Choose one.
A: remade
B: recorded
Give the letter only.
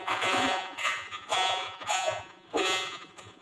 A